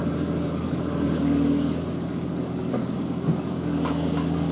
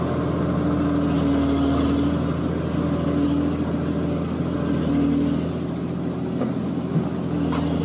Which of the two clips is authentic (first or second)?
second